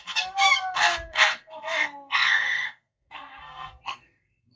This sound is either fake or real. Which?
fake